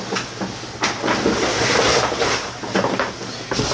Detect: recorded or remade recorded